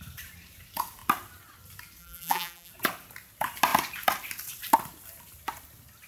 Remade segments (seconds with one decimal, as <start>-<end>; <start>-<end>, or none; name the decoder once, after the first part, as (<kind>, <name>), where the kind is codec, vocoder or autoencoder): 2.0-2.7 (vocoder, BigVGAN v2)